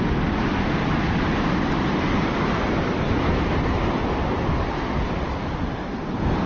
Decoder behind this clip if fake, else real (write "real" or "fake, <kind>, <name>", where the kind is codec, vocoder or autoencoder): real